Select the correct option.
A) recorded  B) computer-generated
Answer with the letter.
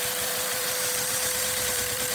B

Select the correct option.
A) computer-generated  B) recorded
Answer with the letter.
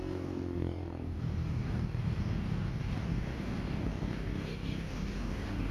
A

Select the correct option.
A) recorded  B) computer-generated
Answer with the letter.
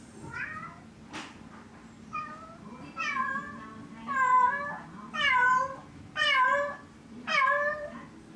A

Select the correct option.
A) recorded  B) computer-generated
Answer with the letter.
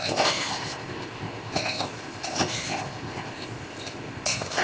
B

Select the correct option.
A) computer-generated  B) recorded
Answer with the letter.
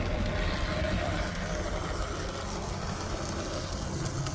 B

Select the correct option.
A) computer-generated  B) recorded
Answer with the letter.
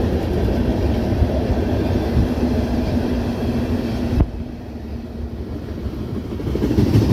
B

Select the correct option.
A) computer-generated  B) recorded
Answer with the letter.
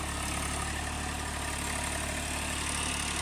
B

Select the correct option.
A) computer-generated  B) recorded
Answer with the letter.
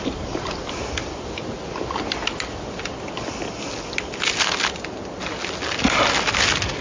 B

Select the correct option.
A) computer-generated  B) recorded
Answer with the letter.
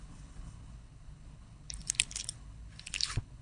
A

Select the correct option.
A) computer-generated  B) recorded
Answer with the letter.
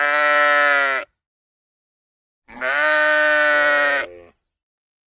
B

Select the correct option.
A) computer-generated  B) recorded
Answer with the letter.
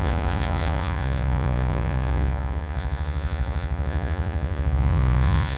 A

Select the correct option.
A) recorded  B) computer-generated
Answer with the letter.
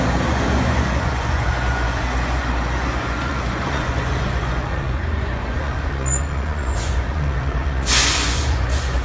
B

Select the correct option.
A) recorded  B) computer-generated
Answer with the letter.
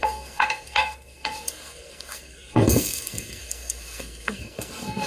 B